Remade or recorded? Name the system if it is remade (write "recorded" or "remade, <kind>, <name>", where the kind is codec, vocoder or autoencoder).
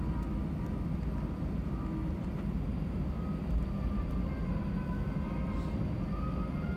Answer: recorded